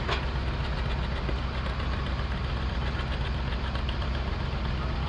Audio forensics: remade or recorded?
recorded